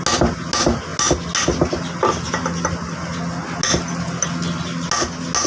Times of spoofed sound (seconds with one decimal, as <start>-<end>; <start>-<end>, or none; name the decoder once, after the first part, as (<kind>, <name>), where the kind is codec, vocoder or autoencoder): none